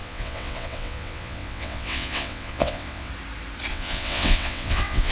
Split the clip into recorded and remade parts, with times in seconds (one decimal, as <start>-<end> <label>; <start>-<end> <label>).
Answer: 0.0-3.1 remade; 3.1-3.7 recorded; 3.7-5.1 remade